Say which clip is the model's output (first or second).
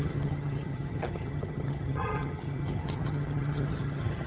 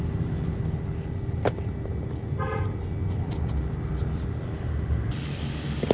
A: first